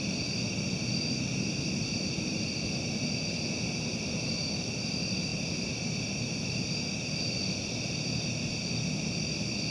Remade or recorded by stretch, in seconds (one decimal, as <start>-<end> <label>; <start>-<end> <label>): 0.0-9.7 recorded